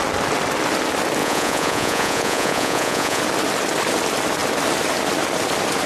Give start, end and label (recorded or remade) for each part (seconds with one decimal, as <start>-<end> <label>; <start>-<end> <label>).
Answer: 0.0-1.2 recorded; 1.2-3.2 remade; 3.2-5.9 recorded